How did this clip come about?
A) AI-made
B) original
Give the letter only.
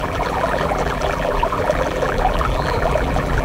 A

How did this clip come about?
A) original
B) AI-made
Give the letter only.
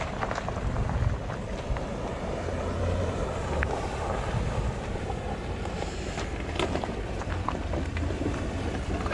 B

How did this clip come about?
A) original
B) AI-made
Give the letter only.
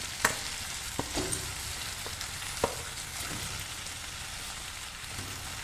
A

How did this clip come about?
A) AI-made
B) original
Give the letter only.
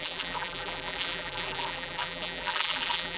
A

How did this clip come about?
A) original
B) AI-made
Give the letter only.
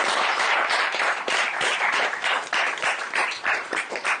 B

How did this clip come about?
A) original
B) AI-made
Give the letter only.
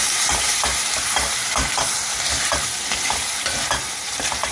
B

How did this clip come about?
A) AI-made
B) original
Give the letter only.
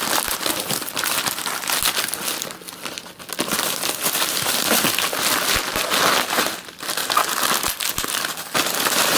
B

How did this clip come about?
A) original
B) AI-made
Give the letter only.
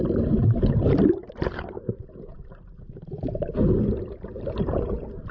B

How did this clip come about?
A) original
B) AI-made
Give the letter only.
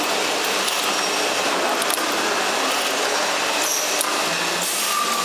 A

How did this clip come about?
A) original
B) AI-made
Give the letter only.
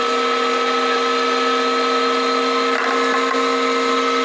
A